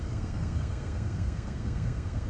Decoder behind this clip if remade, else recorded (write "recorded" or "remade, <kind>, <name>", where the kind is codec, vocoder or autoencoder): remade, codec, SNAC